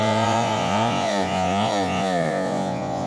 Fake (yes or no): yes